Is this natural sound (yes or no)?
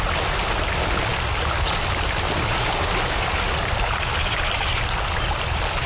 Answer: yes